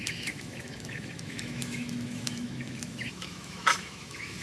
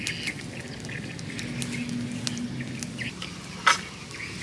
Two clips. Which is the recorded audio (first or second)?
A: second